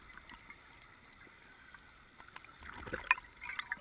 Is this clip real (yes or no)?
yes